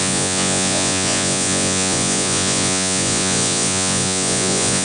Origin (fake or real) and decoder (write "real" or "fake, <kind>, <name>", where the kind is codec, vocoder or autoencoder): fake, vocoder, Vocos